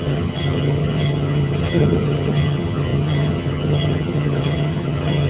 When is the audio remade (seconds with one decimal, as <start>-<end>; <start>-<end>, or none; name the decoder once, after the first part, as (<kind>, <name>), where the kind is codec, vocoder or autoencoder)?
0.0-5.3 (vocoder, HiFi-GAN)